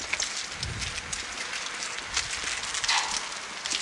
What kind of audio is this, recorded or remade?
recorded